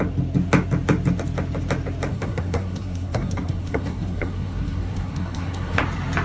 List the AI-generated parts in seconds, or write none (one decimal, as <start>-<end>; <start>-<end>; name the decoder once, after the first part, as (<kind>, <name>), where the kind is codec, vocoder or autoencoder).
2.1-5.8 (codec, SNAC)